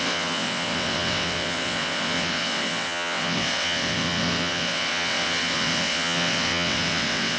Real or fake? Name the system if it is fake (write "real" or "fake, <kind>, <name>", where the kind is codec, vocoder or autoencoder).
fake, vocoder, WaveNeXt